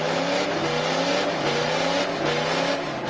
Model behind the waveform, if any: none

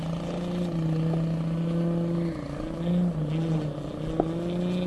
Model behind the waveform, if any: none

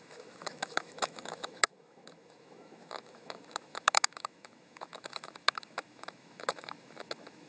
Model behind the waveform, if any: autoencoder, DAC-VAE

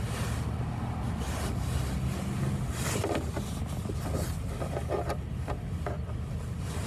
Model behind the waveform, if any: none